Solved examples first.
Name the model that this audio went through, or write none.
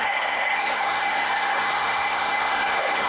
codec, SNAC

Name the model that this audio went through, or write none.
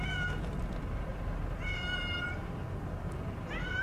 none